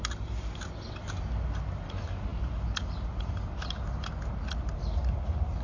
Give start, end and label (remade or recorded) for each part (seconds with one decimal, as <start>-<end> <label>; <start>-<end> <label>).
0.0-5.6 recorded